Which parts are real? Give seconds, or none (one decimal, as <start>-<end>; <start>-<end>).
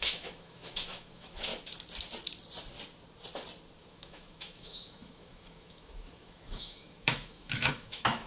1.5-3.8